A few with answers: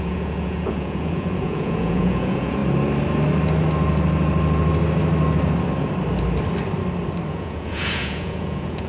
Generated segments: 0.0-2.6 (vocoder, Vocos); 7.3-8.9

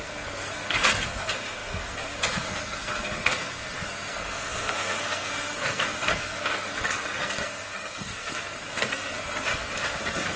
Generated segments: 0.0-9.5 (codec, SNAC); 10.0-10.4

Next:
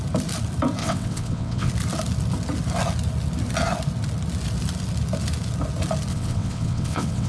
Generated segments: 0.8-1.7 (vocoder, WaveNeXt); 6.1-7.3

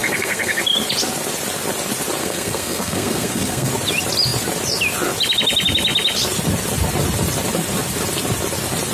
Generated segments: 0.0-0.6 (codec, SNAC); 2.2-3.7

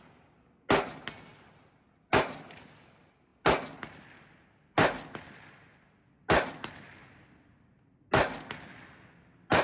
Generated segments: none

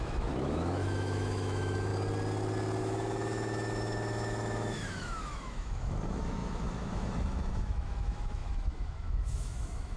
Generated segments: 0.0-1.9 (autoencoder, DAC-VAE); 2.8-10.0

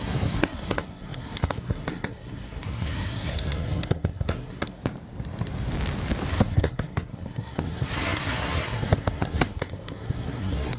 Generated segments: 0.0-4.8 (codec, SNAC); 6.3-10.8